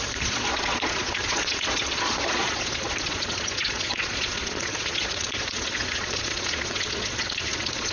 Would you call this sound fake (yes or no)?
yes